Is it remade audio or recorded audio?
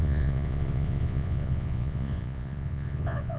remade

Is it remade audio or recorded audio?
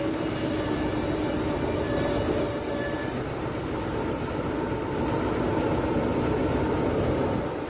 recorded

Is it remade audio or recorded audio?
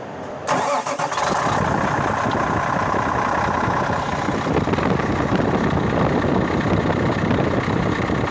recorded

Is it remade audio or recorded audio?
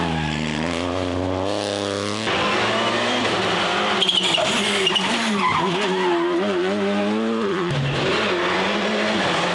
recorded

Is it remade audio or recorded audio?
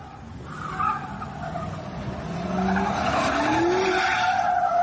recorded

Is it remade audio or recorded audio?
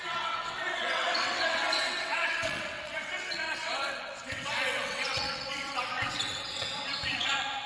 remade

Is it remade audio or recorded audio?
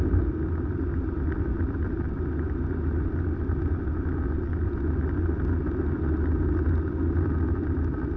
recorded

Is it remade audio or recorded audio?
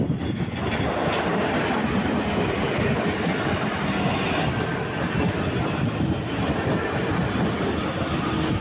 recorded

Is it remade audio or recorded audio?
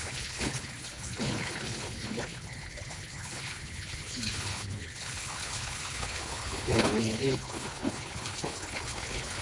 remade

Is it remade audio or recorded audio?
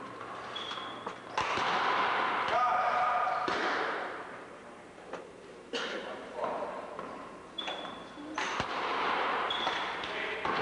remade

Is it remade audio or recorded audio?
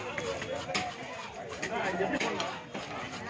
recorded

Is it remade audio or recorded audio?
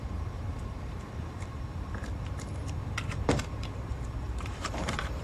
remade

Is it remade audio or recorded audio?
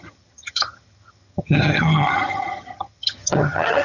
remade